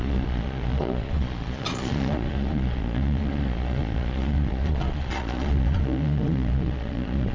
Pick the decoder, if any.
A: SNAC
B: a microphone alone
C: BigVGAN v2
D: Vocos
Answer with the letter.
D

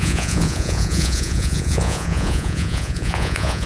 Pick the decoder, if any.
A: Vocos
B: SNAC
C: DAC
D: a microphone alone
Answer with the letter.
A